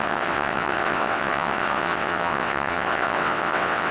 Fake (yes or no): yes